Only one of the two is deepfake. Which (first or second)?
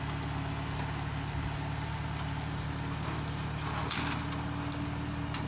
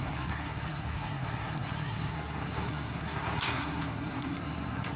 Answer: second